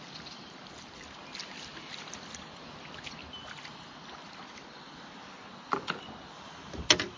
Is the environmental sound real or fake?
real